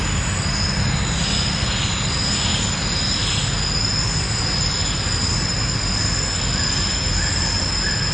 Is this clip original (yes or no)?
yes